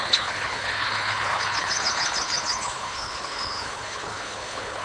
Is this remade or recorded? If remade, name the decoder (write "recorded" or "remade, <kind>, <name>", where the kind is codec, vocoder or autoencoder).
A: remade, codec, HILCodec